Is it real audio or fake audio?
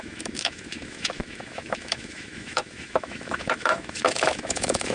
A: fake